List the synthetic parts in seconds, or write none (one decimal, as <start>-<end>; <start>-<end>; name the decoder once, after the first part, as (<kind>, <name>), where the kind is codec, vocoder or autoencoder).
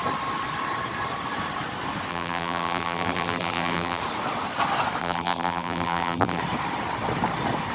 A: 2.1-4.0 (vocoder, BigVGAN v2); 5.0-6.4